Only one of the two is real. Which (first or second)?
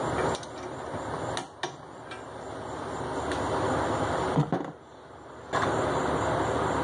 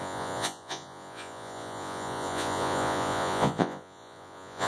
first